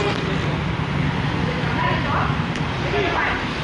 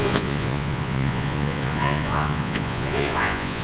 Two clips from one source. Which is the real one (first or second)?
first